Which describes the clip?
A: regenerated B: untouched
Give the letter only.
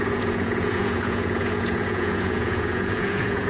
A